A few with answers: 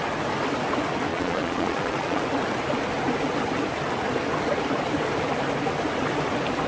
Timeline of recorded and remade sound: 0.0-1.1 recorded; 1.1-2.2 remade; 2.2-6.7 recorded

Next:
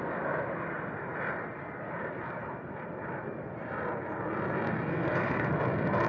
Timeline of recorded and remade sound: 0.0-4.9 recorded; 4.9-5.5 remade; 5.5-6.1 recorded